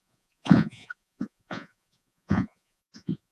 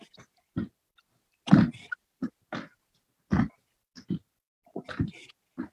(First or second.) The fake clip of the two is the first